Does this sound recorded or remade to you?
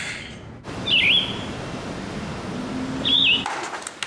recorded